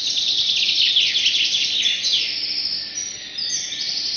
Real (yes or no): yes